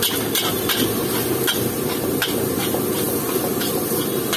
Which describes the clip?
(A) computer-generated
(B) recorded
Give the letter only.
B